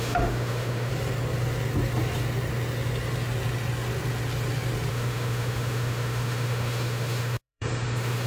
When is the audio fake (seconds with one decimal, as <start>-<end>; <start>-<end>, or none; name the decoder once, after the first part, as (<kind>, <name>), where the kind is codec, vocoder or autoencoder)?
0.0-0.9 (autoencoder, DAC-VAE); 4.9-8.3